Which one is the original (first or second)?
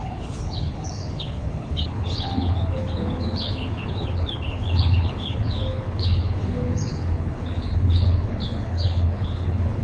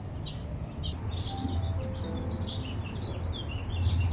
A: second